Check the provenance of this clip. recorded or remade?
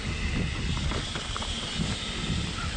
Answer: recorded